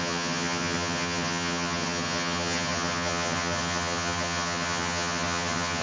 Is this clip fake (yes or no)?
yes